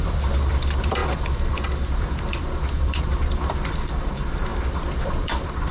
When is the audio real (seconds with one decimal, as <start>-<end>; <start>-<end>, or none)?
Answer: none